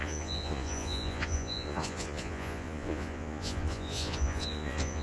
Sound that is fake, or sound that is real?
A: fake